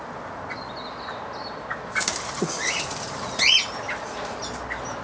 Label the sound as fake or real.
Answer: real